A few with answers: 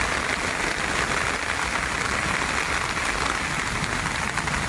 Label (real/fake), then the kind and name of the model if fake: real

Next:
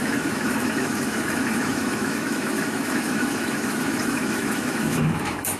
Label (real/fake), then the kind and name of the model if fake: fake, autoencoder, DAC-VAE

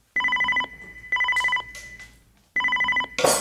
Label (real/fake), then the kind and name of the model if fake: real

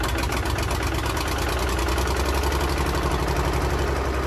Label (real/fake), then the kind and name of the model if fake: real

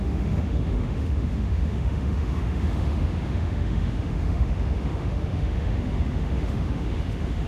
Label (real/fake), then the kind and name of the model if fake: fake, autoencoder, DAC-VAE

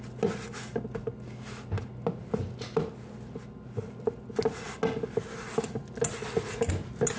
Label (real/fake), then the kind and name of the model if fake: real